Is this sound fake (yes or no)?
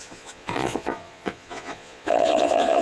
yes